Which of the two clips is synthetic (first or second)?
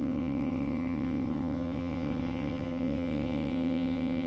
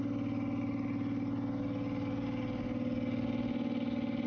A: first